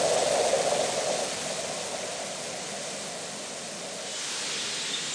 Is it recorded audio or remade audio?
recorded